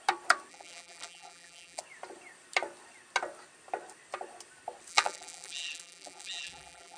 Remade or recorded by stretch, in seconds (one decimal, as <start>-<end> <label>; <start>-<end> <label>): 0.0-0.5 recorded; 0.5-1.8 remade; 1.8-4.9 recorded; 4.9-7.0 remade

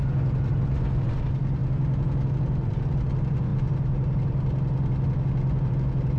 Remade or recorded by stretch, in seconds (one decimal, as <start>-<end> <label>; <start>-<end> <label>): 0.0-6.2 recorded

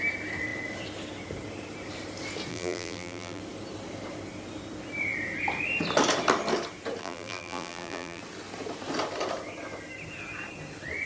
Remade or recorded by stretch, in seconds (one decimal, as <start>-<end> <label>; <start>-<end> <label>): 0.0-2.5 recorded; 2.5-3.4 remade; 3.4-7.0 recorded; 7.0-8.2 remade; 8.2-11.1 recorded